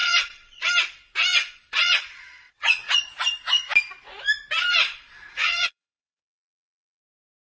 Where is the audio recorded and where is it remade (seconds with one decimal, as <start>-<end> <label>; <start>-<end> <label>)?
0.0-0.6 remade; 0.6-1.3 recorded; 1.3-3.1 remade; 3.1-4.8 recorded; 4.8-7.0 remade; 7.0-7.5 recorded

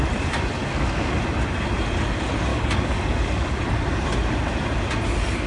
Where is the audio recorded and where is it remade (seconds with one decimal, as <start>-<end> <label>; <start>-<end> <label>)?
0.0-0.6 recorded; 0.6-1.2 remade; 1.2-2.5 recorded; 2.5-3.6 remade; 3.6-5.5 recorded

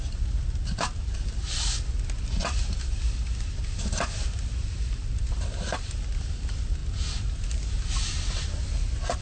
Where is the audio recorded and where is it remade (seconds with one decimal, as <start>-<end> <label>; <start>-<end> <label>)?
0.0-9.2 recorded